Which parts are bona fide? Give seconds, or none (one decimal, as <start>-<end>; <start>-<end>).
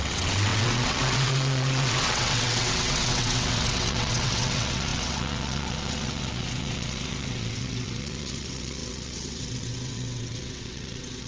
none